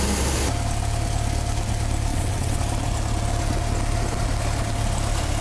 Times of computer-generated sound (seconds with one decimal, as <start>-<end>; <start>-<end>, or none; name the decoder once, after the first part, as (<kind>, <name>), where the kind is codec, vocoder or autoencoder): 2.1-2.6 (vocoder, WaveNeXt)